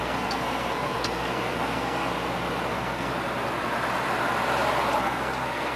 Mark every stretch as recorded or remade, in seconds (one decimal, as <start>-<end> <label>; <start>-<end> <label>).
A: 0.0-2.1 remade; 2.1-2.7 recorded; 2.7-3.1 remade; 3.1-5.0 recorded; 5.0-5.8 remade